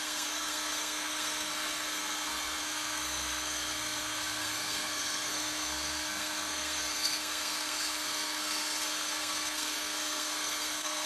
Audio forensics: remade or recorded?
remade